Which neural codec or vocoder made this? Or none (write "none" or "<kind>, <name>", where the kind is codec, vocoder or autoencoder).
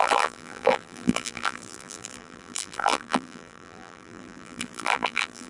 vocoder, BigVGAN v2